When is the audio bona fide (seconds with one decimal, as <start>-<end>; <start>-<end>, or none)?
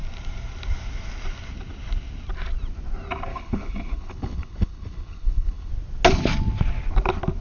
0.0-3.3; 5.7-7.4